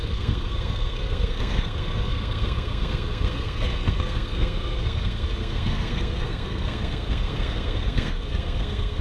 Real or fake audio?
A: fake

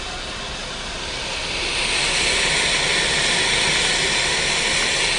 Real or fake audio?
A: real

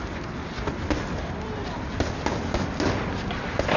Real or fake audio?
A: real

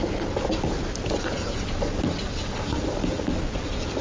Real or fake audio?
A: real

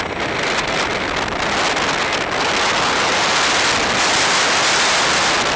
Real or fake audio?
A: real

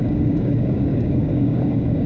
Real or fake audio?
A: fake